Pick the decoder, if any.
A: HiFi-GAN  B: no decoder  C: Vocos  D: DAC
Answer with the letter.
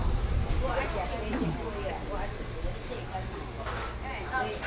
B